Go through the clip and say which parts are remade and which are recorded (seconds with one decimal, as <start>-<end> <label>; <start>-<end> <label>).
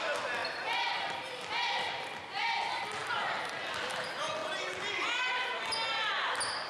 0.0-3.0 recorded; 3.0-4.0 remade; 4.0-6.7 recorded